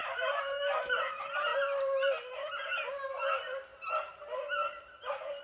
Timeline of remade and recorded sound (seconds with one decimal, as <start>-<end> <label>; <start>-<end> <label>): 0.0-0.9 remade; 0.9-5.4 recorded